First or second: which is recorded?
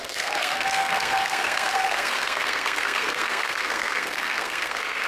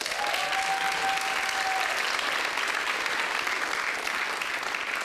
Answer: second